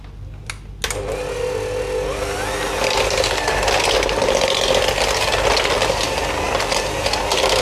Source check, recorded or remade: recorded